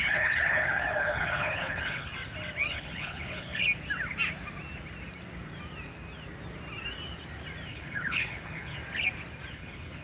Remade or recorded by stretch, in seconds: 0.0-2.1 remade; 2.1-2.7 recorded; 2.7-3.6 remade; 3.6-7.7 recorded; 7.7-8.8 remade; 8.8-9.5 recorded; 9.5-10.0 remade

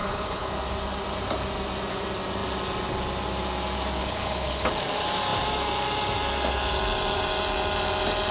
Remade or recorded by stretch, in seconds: 0.0-0.5 remade; 0.5-4.0 recorded; 4.0-4.7 remade; 4.7-8.3 recorded